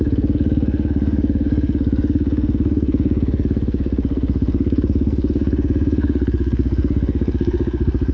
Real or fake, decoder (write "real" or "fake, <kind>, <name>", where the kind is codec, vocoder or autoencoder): fake, codec, SNAC